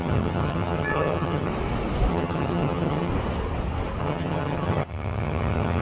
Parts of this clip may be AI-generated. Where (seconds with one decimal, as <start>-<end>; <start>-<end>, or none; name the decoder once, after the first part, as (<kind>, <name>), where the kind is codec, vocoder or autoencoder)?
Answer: 0.0-1.5 (vocoder, HiFi-GAN); 2.1-3.1; 4.0-5.8